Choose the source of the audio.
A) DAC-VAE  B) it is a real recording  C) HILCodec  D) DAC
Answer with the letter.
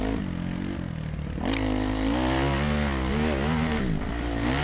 B